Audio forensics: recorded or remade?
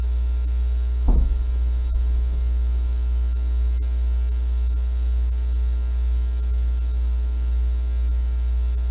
remade